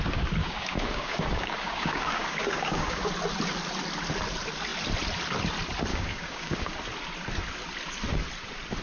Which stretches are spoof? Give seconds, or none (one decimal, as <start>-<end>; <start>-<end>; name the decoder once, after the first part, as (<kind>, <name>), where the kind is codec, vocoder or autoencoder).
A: 0.4-3.1 (codec, DAC); 5.9-6.7